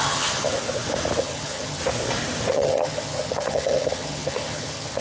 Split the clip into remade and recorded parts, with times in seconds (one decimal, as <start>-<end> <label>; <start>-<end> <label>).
0.0-0.5 remade; 0.5-1.2 recorded; 1.2-1.8 remade; 1.8-2.5 recorded; 2.5-5.0 remade